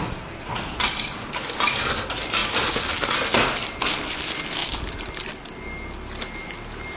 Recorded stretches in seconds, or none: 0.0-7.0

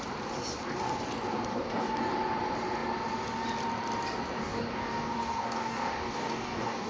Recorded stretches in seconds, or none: 0.0-1.5; 2.1-4.4